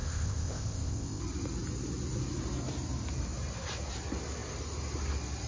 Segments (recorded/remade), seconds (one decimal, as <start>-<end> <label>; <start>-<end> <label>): 0.0-1.2 remade; 1.2-5.5 recorded